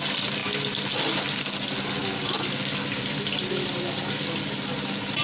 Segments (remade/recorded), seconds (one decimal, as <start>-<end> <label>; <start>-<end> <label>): 0.0-0.4 remade; 0.4-3.5 recorded; 3.5-4.0 remade; 4.0-5.2 recorded